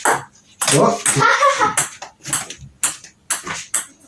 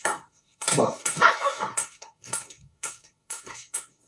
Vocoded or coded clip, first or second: second